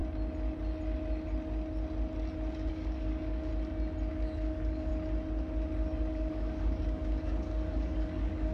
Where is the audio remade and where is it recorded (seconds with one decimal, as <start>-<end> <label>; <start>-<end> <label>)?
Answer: 0.0-2.7 recorded; 2.7-3.5 remade; 3.5-4.1 recorded; 4.1-4.9 remade; 4.9-6.1 recorded; 6.1-8.5 remade